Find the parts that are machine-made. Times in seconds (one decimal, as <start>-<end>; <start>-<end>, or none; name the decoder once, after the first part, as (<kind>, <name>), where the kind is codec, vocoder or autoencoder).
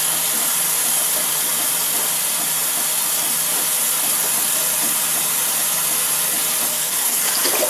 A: 6.7-7.2 (codec, SNAC)